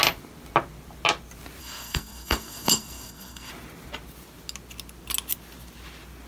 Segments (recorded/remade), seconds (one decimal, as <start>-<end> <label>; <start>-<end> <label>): 0.0-1.6 recorded; 1.6-3.5 remade; 3.5-6.3 recorded